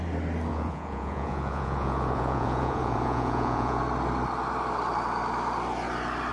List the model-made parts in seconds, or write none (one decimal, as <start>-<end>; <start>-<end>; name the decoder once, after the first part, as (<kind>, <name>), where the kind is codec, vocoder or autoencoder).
0.5-3.8 (vocoder, Vocos)